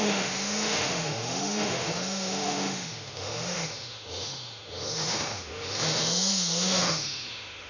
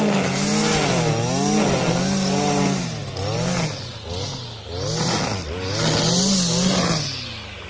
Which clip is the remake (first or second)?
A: first